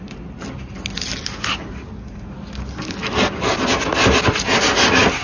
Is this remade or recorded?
recorded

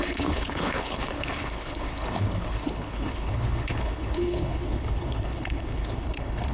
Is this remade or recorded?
remade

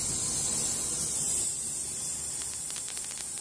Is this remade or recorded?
recorded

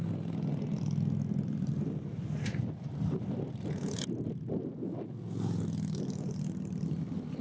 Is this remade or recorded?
recorded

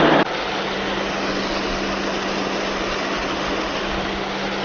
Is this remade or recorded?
recorded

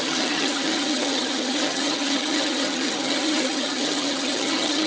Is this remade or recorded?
remade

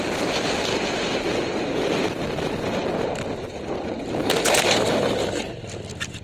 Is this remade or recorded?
recorded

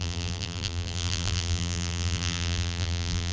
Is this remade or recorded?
remade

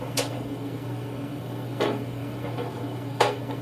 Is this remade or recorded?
remade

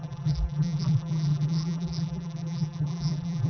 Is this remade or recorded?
remade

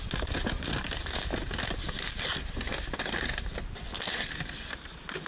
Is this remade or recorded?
recorded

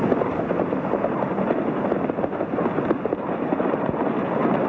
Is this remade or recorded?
recorded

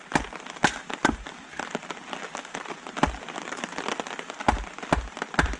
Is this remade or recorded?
recorded